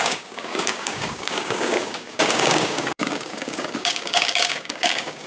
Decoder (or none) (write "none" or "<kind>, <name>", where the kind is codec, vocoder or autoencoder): codec, DAC